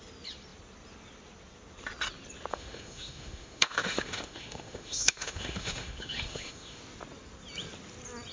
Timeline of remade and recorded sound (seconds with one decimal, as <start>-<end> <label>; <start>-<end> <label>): 0.0-2.5 recorded; 2.5-6.8 remade; 6.8-8.3 recorded